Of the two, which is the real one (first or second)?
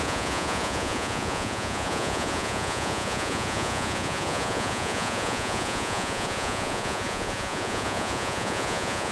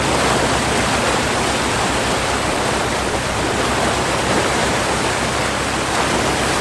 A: second